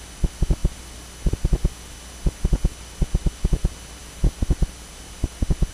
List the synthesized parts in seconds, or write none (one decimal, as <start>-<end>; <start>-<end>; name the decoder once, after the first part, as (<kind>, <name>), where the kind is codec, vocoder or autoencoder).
none